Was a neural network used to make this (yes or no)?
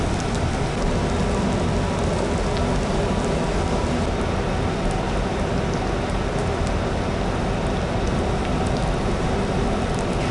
no